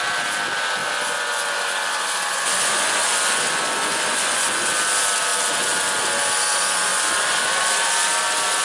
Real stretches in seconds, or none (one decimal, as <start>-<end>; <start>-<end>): 0.0-0.8; 4.7-6.9; 7.7-8.6